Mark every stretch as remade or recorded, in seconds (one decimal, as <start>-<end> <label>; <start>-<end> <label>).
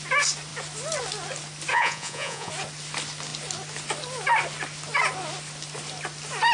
0.0-1.7 recorded; 1.7-2.5 remade; 2.5-6.5 recorded